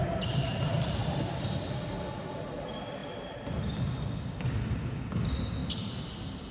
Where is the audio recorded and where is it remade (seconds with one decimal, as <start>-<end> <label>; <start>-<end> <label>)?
0.0-1.2 remade; 1.2-5.6 recorded; 5.6-6.1 remade; 6.1-6.5 recorded